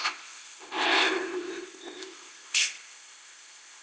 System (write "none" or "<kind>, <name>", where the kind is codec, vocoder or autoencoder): codec, ZipCodec